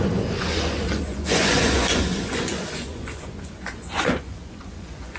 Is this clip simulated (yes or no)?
yes